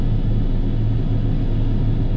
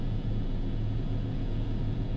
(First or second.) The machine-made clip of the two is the second